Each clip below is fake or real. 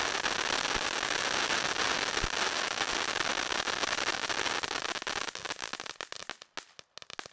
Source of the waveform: real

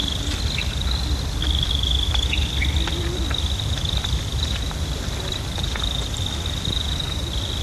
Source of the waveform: real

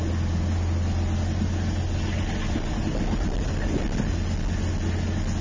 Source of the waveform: real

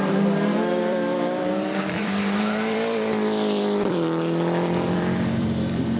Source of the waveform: fake